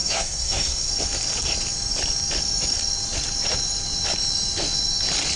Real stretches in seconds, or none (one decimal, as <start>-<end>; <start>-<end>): 0.9-5.4